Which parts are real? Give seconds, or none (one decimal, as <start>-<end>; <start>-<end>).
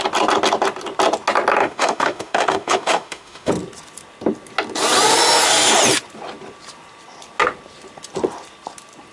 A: 0.0-1.6; 3.5-9.1